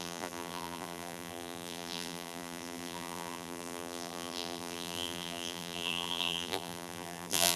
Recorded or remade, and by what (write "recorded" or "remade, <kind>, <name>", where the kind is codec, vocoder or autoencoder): remade, vocoder, BigVGAN v2